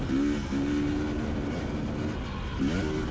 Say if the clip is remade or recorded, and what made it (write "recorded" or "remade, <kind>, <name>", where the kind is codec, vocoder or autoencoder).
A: recorded